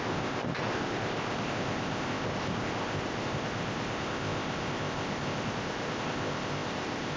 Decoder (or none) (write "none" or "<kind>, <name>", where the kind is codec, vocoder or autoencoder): codec, ZipCodec